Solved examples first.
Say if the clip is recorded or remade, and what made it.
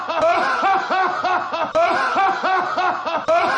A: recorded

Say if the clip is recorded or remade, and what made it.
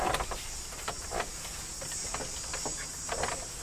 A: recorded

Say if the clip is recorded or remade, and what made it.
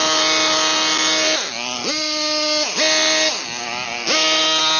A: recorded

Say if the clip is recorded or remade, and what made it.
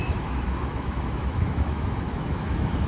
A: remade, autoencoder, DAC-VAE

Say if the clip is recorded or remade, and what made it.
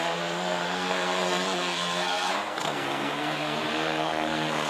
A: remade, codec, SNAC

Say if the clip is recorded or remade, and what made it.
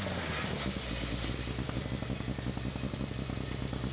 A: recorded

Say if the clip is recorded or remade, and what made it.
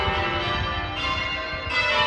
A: recorded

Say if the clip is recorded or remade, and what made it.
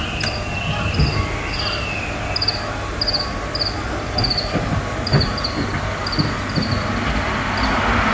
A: recorded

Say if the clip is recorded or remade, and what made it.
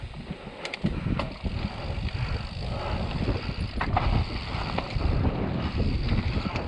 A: recorded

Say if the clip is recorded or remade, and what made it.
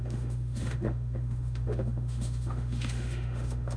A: remade, autoencoder, DAC-VAE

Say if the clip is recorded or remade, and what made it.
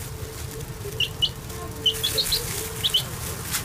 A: recorded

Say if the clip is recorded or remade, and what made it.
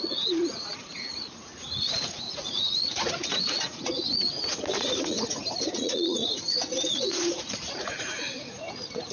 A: remade, vocoder, Vocos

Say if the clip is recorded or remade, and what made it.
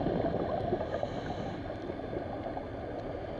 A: recorded